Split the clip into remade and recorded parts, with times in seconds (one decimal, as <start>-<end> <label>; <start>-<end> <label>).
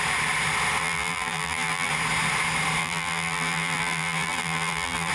0.0-0.8 recorded; 0.8-1.9 remade; 1.9-2.8 recorded; 2.8-5.1 remade